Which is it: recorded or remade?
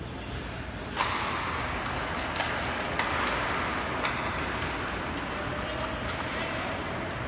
recorded